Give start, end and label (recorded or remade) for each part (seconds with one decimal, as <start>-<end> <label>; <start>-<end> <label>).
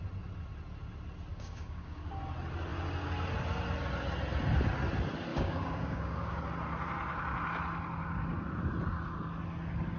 0.0-1.3 recorded; 1.3-2.1 remade; 2.1-5.3 recorded; 5.3-6.4 remade; 6.4-10.0 recorded